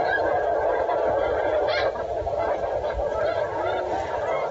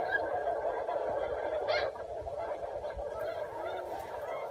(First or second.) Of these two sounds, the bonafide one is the first